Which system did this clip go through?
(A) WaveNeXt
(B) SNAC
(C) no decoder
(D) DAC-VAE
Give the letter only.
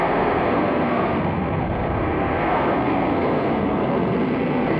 B